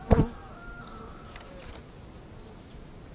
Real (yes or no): yes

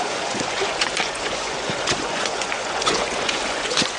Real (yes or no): no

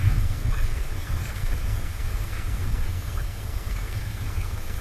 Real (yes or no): no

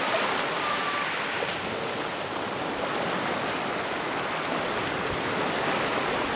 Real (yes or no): yes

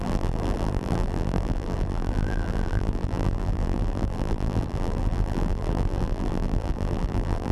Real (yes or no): no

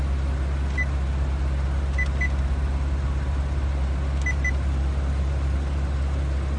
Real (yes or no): yes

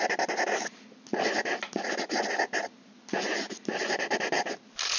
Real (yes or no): yes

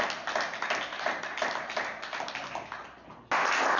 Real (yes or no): yes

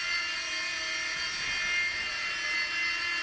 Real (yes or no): yes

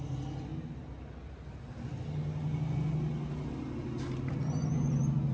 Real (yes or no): yes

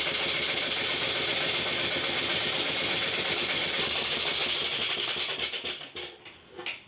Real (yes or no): yes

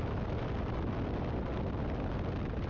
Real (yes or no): yes